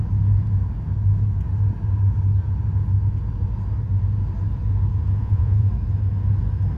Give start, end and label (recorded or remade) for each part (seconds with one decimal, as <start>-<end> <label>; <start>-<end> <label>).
0.0-5.2 recorded; 5.2-5.7 remade; 5.7-6.8 recorded